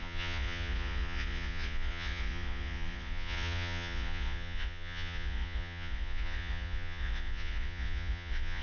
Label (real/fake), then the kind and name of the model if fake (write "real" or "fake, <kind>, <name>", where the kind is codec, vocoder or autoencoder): fake, vocoder, Vocos